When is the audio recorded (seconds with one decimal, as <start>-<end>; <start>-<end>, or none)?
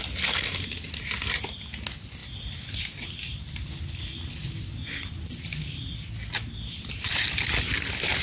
0.0-8.2